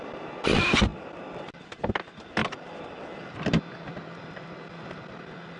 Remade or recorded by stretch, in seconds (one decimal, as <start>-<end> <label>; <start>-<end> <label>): 0.0-5.6 recorded